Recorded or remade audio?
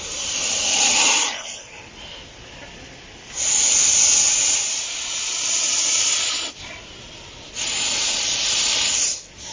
recorded